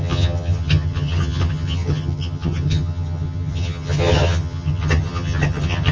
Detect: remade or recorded remade